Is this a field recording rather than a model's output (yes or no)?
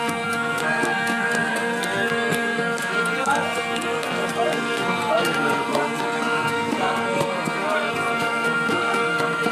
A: no